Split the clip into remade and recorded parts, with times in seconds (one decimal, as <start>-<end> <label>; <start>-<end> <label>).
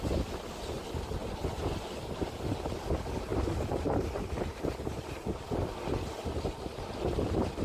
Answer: 0.0-1.2 recorded; 1.2-2.9 remade; 2.9-3.3 recorded; 3.3-5.4 remade; 5.4-7.6 recorded